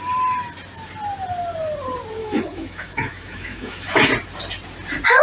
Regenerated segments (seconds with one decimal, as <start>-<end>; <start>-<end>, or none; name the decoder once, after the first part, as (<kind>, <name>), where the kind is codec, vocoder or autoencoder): 2.2-4.1 (autoencoder, DAC-VAE)